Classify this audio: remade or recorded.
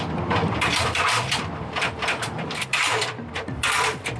remade